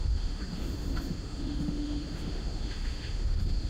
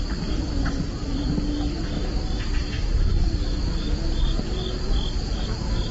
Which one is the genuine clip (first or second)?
second